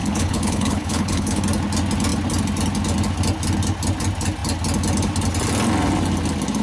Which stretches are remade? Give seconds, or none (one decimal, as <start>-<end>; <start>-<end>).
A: 0.0-1.4